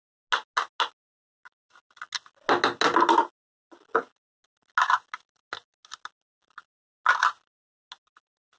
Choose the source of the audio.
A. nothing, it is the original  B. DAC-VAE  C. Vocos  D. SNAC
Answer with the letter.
A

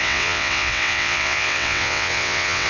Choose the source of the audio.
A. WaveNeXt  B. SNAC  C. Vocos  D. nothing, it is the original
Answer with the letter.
A